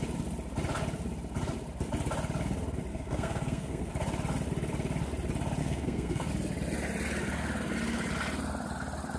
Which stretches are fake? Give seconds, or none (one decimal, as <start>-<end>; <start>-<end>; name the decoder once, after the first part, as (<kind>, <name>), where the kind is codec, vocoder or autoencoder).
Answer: 2.9-3.9 (codec, SNAC); 5.6-6.3